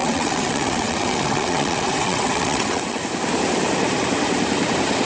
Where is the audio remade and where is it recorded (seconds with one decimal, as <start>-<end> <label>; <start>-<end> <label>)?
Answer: 0.0-3.0 remade; 3.0-5.0 recorded